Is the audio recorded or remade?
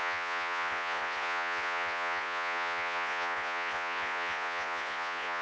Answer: remade